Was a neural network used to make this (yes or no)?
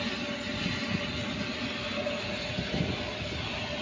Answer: no